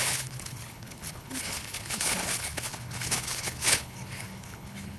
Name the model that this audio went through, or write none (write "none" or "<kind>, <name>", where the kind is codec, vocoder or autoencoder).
codec, HILCodec